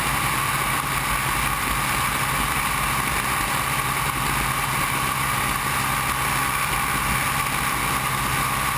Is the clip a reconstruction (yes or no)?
no